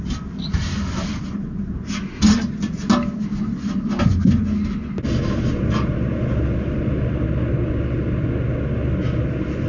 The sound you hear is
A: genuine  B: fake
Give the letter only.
A